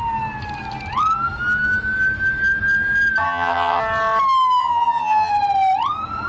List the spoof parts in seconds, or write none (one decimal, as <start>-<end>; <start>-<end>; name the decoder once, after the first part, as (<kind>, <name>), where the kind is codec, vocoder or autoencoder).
3.2-3.8 (vocoder, HiFi-GAN); 4.6-5.3